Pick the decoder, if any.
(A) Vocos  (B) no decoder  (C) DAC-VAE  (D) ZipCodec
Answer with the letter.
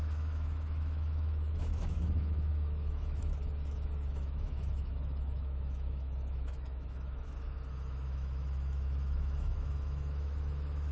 C